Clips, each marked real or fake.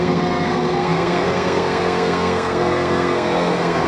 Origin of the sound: fake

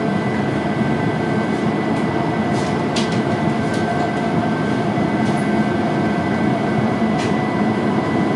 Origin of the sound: real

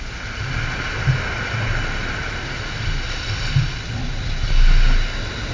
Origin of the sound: real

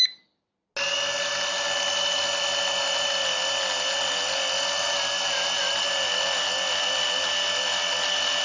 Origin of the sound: real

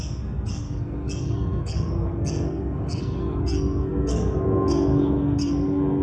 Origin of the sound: fake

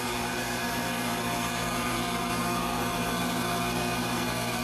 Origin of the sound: fake